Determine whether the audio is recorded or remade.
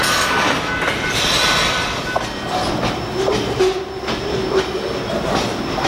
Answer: recorded